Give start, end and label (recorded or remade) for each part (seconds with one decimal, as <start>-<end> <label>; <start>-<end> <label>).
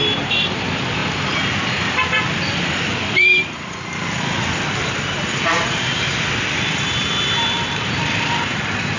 0.0-9.0 remade